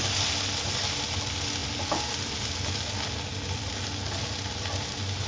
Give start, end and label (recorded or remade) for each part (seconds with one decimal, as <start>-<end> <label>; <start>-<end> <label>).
0.0-5.3 recorded